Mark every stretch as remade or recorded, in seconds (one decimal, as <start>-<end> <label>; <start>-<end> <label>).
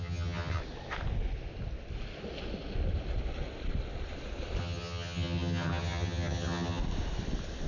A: 0.0-0.6 remade; 0.6-4.6 recorded; 4.6-6.8 remade; 6.8-7.7 recorded